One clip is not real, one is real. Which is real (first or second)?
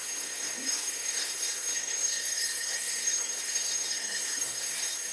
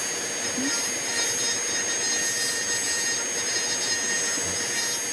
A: second